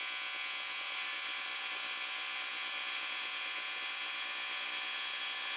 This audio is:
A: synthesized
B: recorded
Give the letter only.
A